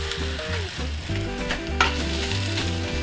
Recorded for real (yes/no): yes